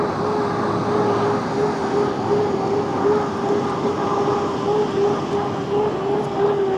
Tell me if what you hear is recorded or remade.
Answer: recorded